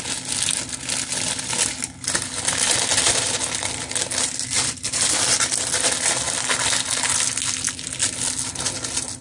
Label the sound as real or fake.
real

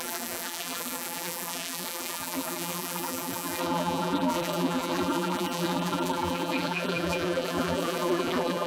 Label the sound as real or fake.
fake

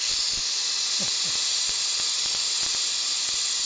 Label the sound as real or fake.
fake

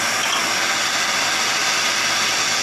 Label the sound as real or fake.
real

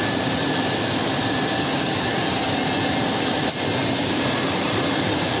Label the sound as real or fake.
fake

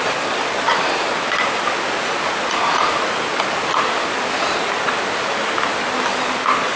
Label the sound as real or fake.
real